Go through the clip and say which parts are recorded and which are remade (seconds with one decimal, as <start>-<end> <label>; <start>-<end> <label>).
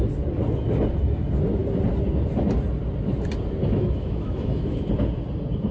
0.0-3.6 recorded; 3.6-4.9 remade; 4.9-5.7 recorded